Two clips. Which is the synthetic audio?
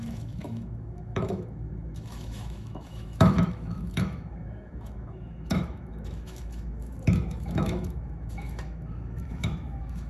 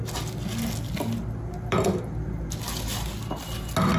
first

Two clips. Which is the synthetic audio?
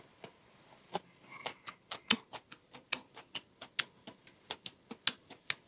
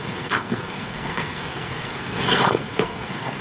second